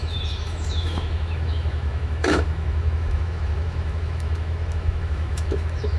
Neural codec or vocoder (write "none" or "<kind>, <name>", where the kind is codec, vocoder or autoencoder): autoencoder, DAC-VAE